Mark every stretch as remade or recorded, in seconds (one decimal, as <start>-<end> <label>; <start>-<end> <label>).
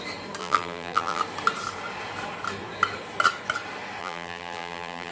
0.0-0.4 recorded; 0.4-1.2 remade; 1.2-4.0 recorded; 4.0-5.1 remade